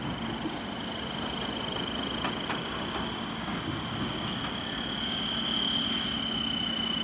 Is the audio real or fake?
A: real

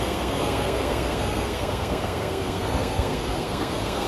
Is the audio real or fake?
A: fake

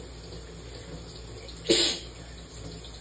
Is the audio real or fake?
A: real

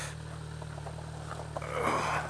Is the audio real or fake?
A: real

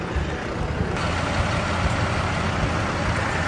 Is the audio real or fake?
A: real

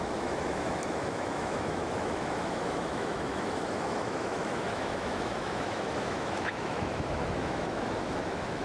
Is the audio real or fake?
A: fake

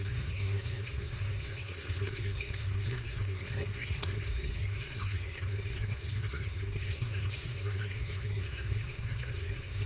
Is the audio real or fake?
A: fake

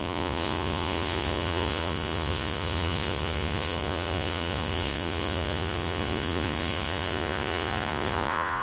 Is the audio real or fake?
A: fake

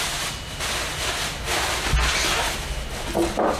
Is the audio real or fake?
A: real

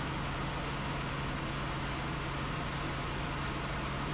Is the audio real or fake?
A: real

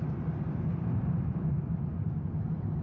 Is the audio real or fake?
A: fake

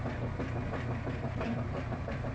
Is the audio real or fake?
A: real